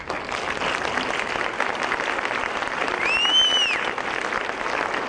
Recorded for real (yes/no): yes